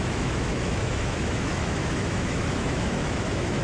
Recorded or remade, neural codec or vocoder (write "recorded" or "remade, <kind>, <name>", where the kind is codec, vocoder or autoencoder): remade, autoencoder, DAC-VAE